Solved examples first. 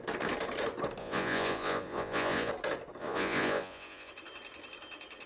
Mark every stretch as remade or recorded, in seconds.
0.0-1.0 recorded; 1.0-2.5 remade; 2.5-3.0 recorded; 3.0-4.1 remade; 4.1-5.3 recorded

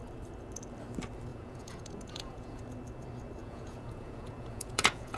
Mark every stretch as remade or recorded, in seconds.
0.0-1.3 recorded; 1.3-2.6 remade; 2.6-3.4 recorded; 3.4-5.2 remade

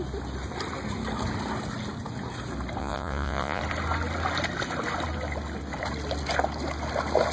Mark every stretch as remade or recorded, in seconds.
0.0-2.8 recorded; 2.8-3.6 remade; 3.6-7.3 recorded

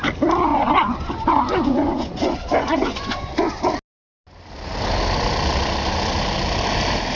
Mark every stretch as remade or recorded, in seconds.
0.0-0.5 recorded; 0.5-3.6 remade; 3.6-7.2 recorded

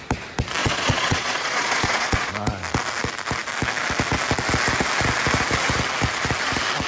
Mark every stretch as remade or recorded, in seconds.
0.0-0.6 recorded; 0.6-2.3 remade; 2.3-6.9 recorded

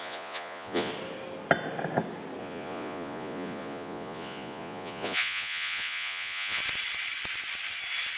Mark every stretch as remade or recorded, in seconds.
0.0-0.9 remade; 0.9-2.4 recorded; 2.4-6.6 remade; 6.6-8.2 recorded

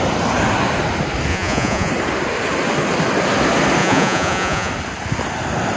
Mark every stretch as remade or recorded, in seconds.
0.0-1.3 recorded; 1.3-1.9 remade; 1.9-3.8 recorded; 3.8-4.7 remade; 4.7-5.8 recorded

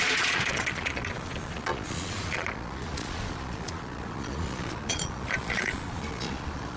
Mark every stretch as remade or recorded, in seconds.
0.0-6.8 remade